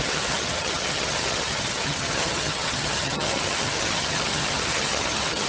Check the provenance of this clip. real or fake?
fake